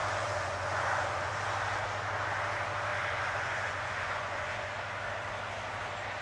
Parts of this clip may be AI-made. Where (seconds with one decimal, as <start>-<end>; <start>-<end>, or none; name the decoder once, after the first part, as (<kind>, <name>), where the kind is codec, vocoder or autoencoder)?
0.0-1.3 (vocoder, Vocos); 2.9-4.7

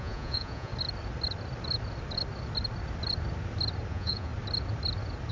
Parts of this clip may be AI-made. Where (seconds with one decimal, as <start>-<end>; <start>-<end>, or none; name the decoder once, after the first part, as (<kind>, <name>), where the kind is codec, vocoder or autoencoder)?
0.0-0.7 (vocoder, Vocos); 3.9-4.3